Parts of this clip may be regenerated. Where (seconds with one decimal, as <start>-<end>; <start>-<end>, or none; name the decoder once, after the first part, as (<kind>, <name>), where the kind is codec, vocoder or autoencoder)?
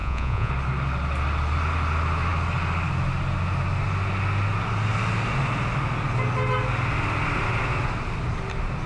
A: 0.0-0.5 (vocoder, Vocos)